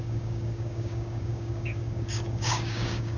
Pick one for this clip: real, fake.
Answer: fake